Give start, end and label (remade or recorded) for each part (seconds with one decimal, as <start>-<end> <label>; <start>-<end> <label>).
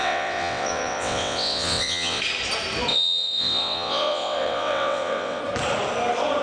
0.0-2.2 remade; 2.2-2.9 recorded; 2.9-5.4 remade; 5.4-6.4 recorded